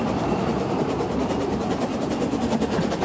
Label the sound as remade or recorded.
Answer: remade